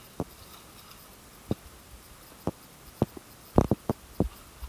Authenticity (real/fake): real